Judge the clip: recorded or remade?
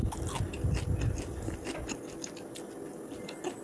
recorded